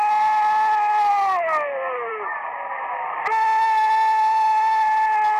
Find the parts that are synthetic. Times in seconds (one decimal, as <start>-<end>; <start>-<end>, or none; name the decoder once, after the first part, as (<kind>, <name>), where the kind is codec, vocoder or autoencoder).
none